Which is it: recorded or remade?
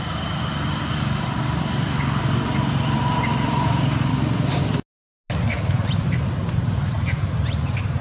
recorded